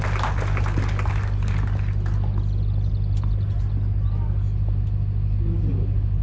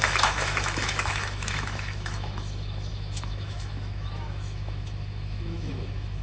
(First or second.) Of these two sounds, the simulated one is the second